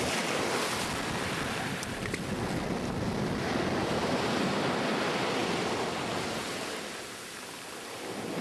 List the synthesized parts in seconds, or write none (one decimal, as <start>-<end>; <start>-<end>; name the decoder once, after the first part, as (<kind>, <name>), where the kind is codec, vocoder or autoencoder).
none